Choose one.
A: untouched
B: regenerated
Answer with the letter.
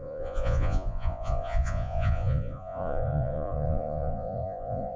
B